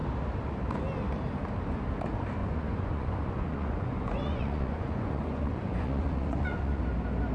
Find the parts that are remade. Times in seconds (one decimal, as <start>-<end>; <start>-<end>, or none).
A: 2.4-6.8